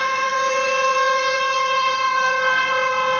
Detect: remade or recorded remade